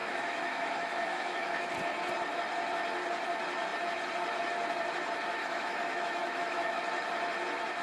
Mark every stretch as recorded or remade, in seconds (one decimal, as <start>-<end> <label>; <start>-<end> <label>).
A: 0.0-1.7 remade; 1.7-5.4 recorded; 5.4-6.8 remade; 6.8-7.8 recorded